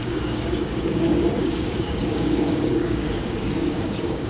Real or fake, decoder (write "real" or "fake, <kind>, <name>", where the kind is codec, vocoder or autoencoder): fake, codec, DAC